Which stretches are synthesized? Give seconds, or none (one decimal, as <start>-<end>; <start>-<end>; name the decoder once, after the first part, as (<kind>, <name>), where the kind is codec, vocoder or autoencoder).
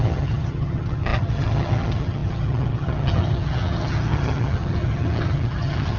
0.0-6.0 (vocoder, HiFi-GAN)